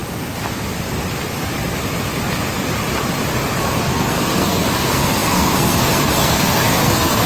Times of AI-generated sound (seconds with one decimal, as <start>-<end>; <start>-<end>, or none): 3.6-7.3